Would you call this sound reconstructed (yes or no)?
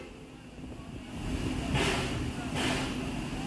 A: no